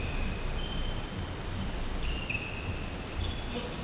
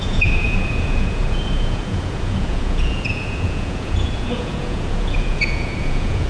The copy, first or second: second